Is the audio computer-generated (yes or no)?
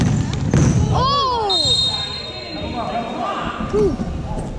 no